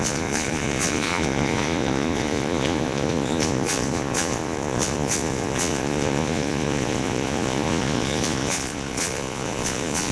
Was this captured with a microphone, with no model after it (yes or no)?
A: no